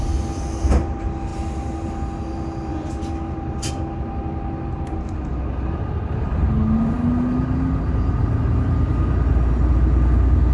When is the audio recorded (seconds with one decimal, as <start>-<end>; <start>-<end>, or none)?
0.0-10.5